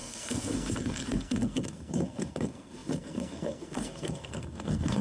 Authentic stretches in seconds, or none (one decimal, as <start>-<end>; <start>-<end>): none